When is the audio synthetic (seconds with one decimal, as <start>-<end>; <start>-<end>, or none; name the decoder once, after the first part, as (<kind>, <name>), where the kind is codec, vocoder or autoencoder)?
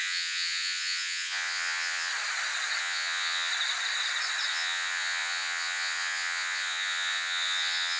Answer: 0.0-2.1 (vocoder, Vocos); 2.8-3.5; 4.5-8.0